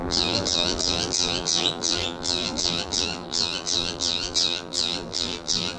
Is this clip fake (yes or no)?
yes